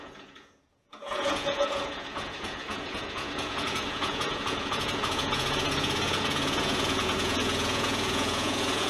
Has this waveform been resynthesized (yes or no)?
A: yes